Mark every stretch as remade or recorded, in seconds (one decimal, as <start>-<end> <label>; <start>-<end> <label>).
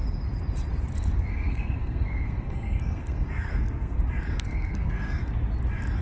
0.0-1.3 recorded; 1.3-4.0 remade; 4.0-4.5 recorded; 4.5-5.3 remade; 5.3-6.0 recorded